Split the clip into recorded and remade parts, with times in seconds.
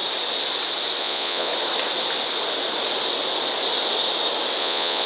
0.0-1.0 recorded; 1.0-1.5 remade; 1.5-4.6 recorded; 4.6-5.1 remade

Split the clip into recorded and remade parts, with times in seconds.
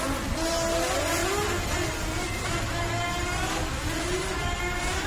0.0-5.1 recorded